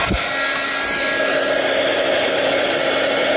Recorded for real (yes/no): yes